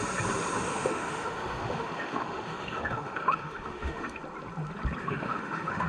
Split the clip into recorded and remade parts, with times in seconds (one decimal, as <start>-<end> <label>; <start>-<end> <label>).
0.0-0.7 recorded; 0.7-4.2 remade; 4.2-5.0 recorded; 5.0-5.9 remade